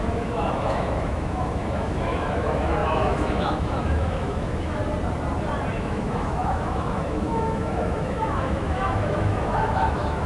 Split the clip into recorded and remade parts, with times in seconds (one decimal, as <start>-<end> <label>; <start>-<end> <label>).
0.0-4.8 remade; 4.8-5.7 recorded; 5.7-10.3 remade